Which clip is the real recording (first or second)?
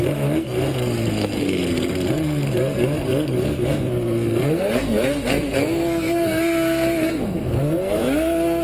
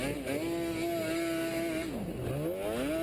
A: second